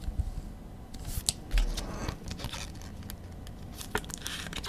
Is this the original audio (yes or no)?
yes